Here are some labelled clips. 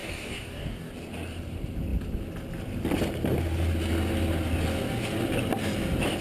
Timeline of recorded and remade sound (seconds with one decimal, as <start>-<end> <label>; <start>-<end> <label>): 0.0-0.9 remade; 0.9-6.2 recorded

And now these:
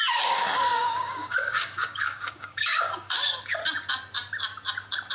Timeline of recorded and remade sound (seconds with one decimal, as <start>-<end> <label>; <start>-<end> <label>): 0.0-3.6 remade; 3.6-5.1 recorded

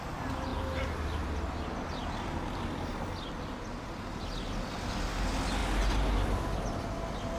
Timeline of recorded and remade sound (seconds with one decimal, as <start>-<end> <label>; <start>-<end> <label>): 0.0-7.4 recorded

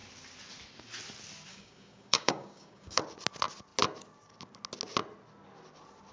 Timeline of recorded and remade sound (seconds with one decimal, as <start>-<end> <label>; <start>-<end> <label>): 0.0-1.5 recorded; 1.5-3.0 remade; 3.0-6.1 recorded

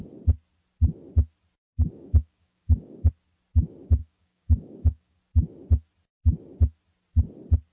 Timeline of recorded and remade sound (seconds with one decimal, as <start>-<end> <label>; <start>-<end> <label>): 0.0-1.7 recorded; 1.7-3.1 remade; 3.1-4.0 recorded; 4.0-5.2 remade; 5.2-7.7 recorded

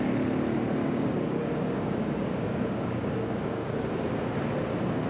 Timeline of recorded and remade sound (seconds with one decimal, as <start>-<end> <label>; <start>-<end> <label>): 0.0-0.8 recorded; 0.8-3.9 remade; 3.9-5.1 recorded